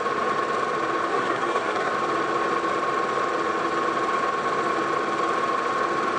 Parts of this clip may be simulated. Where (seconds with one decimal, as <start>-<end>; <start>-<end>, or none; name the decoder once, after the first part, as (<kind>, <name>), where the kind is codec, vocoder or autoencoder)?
1.1-1.9 (codec, SNAC)